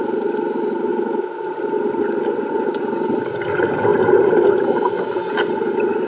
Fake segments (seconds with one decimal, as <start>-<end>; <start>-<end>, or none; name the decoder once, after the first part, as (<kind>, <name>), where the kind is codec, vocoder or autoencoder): none